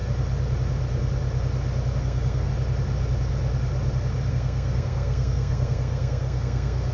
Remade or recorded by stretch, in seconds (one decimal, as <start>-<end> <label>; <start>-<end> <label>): 0.0-2.0 recorded; 2.0-2.5 remade; 2.5-4.3 recorded; 4.3-6.9 remade